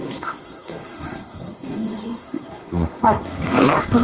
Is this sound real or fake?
fake